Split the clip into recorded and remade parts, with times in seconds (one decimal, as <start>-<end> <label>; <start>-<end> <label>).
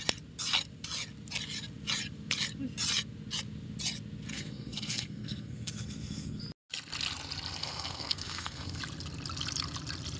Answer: 0.0-4.3 recorded; 4.3-6.4 remade; 6.4-7.6 recorded; 7.6-8.8 remade; 8.8-10.2 recorded